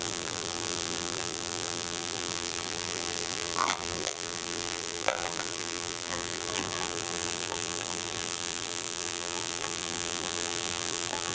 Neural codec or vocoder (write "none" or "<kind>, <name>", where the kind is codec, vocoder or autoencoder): vocoder, BigVGAN v2